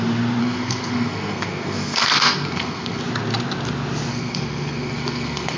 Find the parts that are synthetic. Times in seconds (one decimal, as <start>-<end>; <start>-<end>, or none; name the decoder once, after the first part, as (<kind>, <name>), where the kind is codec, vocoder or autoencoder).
0.4-3.0 (codec, SNAC); 4.1-5.6